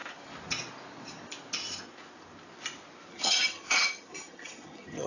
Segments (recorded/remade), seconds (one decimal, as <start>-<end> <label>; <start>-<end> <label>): 0.0-3.1 recorded; 3.1-5.1 remade